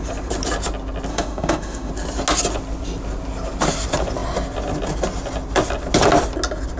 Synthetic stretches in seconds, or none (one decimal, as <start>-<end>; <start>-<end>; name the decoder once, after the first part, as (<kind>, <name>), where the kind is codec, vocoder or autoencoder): 1.1-1.9 (autoencoder, DAC-VAE)